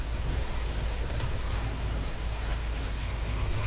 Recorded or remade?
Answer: remade